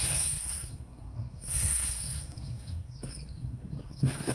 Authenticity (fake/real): fake